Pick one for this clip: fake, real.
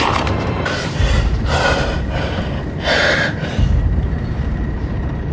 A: fake